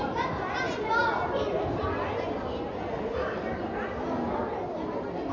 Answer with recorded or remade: recorded